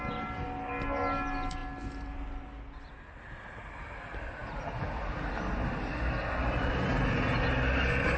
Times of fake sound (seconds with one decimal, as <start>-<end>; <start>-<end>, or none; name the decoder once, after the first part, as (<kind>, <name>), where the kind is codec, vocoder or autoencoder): none